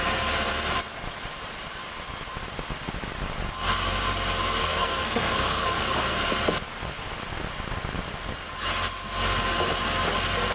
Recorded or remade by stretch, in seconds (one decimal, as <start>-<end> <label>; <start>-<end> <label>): 0.0-4.6 recorded; 4.6-6.3 remade; 6.3-10.5 recorded